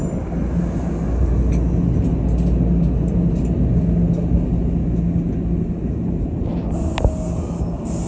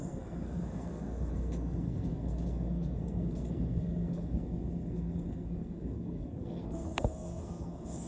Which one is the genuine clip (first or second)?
first